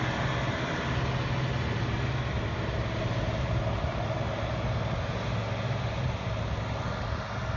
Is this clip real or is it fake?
real